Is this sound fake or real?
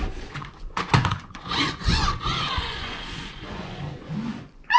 fake